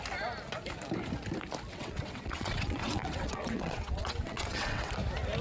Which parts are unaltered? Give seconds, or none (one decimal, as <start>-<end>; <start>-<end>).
0.0-1.7; 4.9-5.4